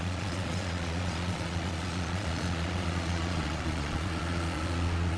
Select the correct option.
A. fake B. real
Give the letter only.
A